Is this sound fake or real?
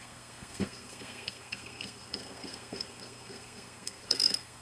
fake